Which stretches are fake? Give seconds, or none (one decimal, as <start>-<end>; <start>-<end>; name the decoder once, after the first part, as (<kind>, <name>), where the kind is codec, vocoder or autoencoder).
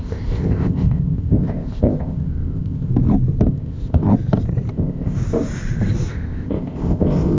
0.0-2.9 (codec, ZipCodec); 3.5-4.1; 4.7-5.2; 6.1-7.4